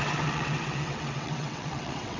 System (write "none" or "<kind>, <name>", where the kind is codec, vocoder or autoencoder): vocoder, WaveNeXt